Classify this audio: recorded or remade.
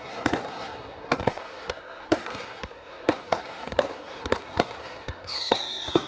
remade